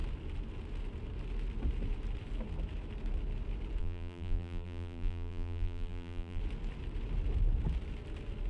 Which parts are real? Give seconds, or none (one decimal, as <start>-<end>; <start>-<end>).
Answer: 0.0-3.8; 6.4-8.5